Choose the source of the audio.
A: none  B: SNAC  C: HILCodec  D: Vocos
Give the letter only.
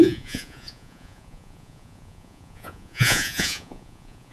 D